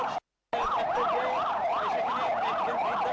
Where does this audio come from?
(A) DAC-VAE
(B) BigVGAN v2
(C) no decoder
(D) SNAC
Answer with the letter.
C